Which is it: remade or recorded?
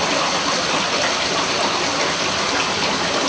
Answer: recorded